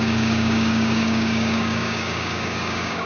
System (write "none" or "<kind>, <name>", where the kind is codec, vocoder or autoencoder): codec, DAC